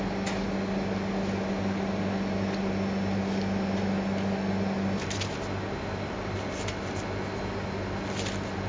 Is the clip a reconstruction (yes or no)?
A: no